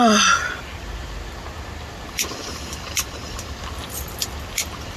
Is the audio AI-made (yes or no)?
no